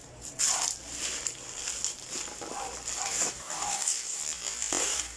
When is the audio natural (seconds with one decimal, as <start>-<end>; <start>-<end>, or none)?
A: 0.0-3.1; 4.2-4.8